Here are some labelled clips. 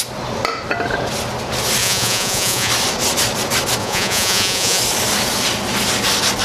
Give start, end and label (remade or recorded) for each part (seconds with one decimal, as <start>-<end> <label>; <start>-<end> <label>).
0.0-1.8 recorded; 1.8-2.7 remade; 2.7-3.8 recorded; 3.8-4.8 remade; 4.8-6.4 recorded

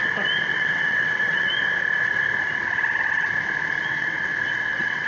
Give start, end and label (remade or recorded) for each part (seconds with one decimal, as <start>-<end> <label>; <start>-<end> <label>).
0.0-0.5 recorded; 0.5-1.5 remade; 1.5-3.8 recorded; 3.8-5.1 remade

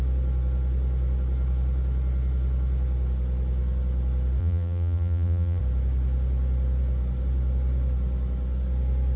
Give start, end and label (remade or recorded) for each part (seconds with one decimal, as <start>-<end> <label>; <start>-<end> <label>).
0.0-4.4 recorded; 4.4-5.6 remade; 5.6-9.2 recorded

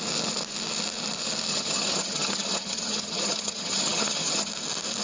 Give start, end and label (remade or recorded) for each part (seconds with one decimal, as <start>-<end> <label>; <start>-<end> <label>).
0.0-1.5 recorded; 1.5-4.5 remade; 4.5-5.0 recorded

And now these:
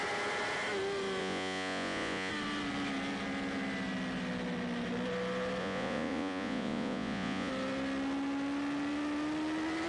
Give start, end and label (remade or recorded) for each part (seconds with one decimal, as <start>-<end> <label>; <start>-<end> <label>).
0.0-1.2 recorded; 1.2-2.3 remade; 2.3-5.6 recorded; 5.6-7.5 remade; 7.5-9.9 recorded

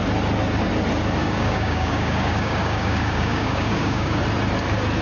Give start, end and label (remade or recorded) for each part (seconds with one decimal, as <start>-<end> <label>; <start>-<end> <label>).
0.0-1.2 recorded; 1.2-4.2 remade; 4.2-5.0 recorded

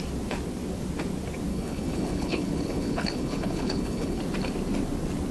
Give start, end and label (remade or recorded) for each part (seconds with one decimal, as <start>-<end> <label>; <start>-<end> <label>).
0.0-1.5 recorded; 1.5-4.2 remade; 4.2-5.3 recorded

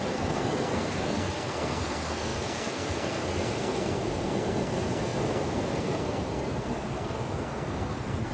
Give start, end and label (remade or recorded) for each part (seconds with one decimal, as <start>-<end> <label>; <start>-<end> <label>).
0.0-8.3 remade